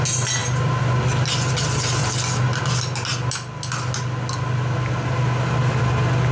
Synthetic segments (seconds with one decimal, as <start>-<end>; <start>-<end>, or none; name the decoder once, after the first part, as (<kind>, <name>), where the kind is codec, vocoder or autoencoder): none